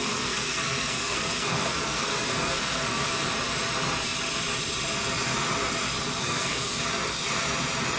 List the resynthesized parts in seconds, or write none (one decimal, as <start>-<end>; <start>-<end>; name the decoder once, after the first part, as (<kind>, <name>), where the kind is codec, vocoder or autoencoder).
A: 0.0-3.3 (codec, SNAC); 6.2-6.8